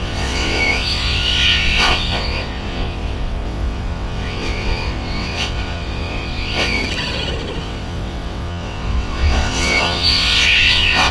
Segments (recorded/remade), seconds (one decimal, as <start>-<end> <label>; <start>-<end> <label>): 0.0-6.8 remade; 6.8-7.6 recorded; 7.6-11.1 remade